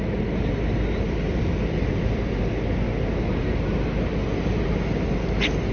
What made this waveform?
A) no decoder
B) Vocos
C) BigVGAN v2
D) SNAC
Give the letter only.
A